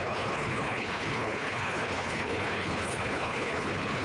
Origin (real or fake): fake